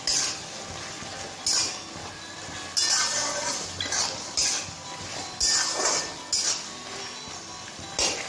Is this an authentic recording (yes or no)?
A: yes